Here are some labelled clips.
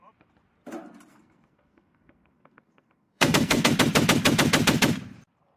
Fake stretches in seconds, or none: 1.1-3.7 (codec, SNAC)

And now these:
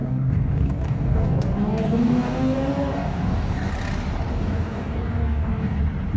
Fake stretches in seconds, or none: 0.0-3.7 (codec, DAC); 4.3-5.8